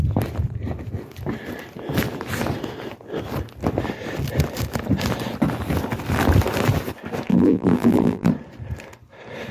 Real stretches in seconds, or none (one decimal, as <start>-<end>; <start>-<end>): 0.0-7.3; 8.3-9.5

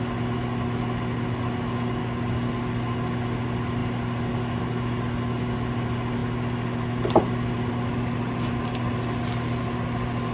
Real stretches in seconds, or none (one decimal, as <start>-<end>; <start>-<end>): 0.0-2.0; 2.5-10.3

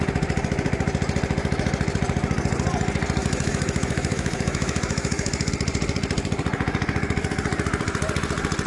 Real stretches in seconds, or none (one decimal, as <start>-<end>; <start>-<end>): 0.0-3.2; 5.5-8.7

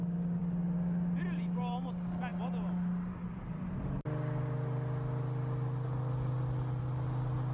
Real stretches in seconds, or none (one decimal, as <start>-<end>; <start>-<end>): 0.0-7.5